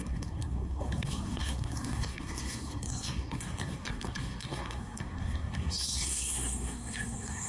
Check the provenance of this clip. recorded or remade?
remade